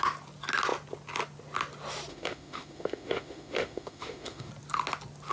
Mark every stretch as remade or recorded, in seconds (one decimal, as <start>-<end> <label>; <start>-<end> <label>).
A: 0.0-2.1 recorded; 2.1-4.5 remade; 4.5-5.3 recorded